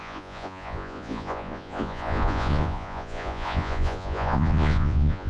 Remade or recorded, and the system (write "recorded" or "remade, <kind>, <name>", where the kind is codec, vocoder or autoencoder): remade, vocoder, Vocos